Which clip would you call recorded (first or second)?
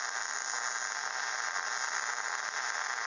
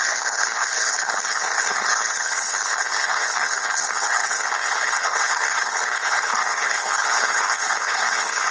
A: first